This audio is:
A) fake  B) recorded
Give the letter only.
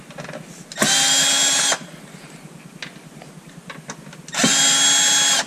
B